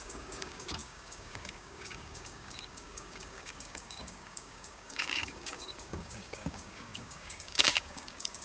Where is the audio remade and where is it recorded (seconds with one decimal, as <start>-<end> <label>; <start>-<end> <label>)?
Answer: 0.0-8.4 remade